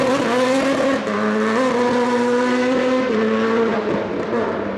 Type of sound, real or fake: real